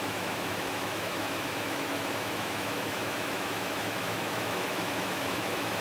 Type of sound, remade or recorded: remade